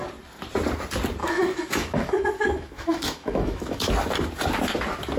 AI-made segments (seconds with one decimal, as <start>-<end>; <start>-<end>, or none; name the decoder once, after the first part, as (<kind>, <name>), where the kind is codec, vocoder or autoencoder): 1.2-3.9 (autoencoder, DAC-VAE)